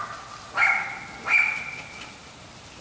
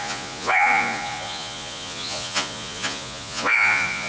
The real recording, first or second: first